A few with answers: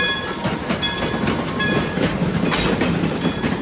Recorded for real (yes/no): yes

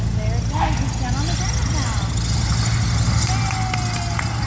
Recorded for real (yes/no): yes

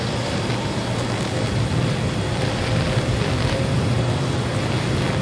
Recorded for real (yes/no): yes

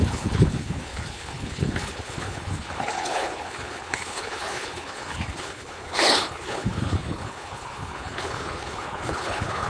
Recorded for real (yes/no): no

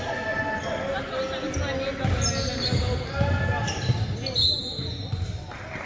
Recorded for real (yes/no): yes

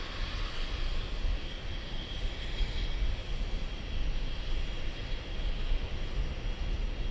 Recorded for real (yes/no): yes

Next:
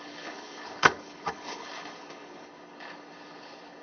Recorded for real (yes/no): no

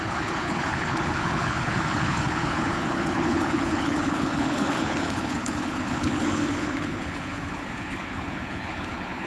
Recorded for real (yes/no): no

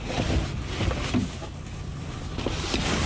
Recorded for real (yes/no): yes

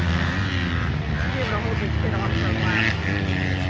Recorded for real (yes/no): yes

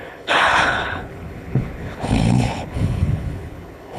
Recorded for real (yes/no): no